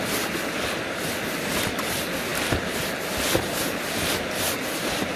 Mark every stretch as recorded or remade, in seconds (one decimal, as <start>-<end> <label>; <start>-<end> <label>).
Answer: 0.0-5.2 recorded